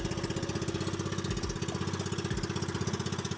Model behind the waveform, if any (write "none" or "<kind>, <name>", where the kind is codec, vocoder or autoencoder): none